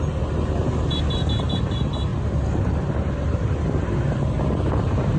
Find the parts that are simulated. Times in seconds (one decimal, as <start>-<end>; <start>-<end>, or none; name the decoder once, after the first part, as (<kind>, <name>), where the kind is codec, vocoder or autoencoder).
none